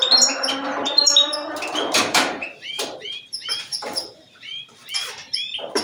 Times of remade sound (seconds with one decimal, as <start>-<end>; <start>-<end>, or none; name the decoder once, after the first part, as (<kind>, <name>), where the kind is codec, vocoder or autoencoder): 0.0-5.8 (vocoder, BigVGAN v2)